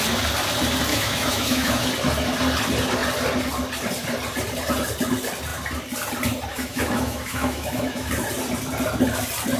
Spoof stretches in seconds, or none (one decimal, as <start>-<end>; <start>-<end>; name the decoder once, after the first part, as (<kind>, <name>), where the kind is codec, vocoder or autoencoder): 0.9-1.9 (autoencoder, DAC-VAE); 6.5-8.1